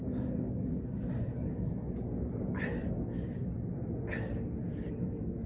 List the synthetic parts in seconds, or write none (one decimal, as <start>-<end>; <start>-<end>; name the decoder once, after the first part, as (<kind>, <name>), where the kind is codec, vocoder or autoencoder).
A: 0.0-1.7 (codec, DAC); 4.9-5.5